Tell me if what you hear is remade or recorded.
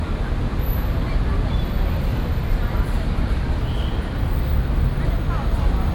recorded